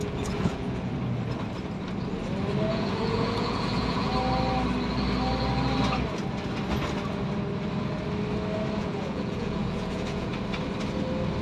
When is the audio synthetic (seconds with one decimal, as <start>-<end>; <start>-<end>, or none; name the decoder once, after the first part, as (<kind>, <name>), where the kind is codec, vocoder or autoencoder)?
0.0-0.9 (vocoder, Vocos); 2.7-4.1; 8.8-10.3